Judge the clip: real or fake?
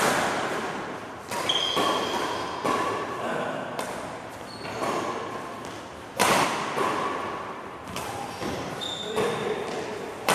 real